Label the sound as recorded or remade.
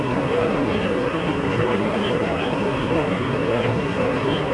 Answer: remade